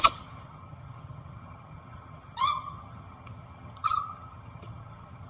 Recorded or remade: remade